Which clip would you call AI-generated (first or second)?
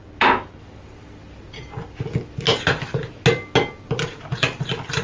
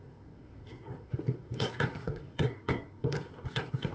second